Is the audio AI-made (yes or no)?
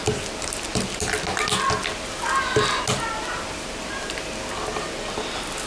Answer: no